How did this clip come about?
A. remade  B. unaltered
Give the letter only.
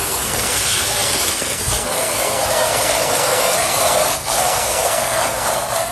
A